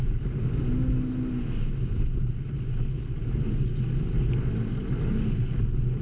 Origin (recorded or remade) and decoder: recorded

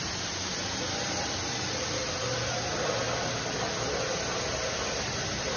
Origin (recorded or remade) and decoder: recorded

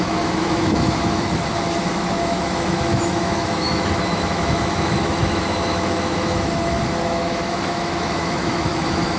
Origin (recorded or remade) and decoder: remade, autoencoder, DAC-VAE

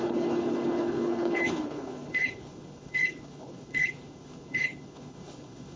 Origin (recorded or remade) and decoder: remade, codec, HILCodec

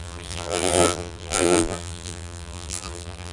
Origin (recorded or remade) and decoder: remade, vocoder, BigVGAN v2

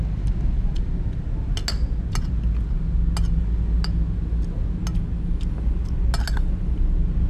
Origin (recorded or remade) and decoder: recorded